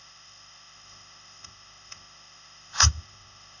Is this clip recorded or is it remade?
remade